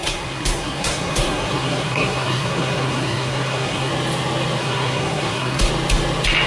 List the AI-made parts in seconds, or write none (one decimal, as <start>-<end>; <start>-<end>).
0.0-3.9; 4.6-5.7